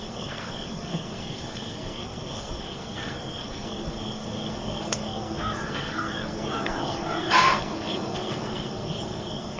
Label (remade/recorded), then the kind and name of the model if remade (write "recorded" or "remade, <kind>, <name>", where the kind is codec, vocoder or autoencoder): remade, codec, SNAC